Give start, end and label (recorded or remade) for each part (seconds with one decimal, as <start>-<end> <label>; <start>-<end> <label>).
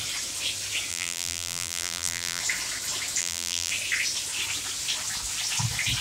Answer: 0.0-0.9 recorded; 0.9-2.4 remade; 2.4-3.2 recorded; 3.2-3.7 remade; 3.7-6.0 recorded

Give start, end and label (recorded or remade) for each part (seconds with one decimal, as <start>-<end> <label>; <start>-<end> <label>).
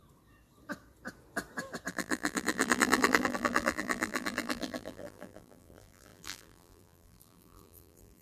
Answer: 0.0-1.9 recorded; 1.9-8.2 remade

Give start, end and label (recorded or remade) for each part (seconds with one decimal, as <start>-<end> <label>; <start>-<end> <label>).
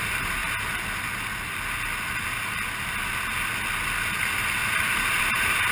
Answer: 0.0-0.4 remade; 0.4-3.8 recorded; 3.8-4.6 remade; 4.6-5.2 recorded; 5.2-5.7 remade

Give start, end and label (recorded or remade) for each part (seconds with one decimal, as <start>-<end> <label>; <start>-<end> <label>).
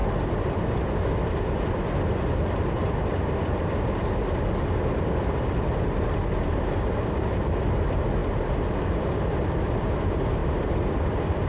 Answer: 0.0-0.6 remade; 0.6-10.4 recorded; 10.4-11.5 remade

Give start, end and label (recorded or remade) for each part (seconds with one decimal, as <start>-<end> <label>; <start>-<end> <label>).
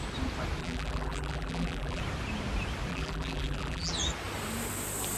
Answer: 0.0-0.6 recorded; 0.6-2.0 remade; 2.0-2.9 recorded; 2.9-3.9 remade; 3.9-5.2 recorded